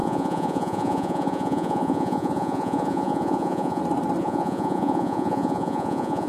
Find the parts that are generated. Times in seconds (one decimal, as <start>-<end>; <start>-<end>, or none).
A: 0.0-3.8; 4.2-6.3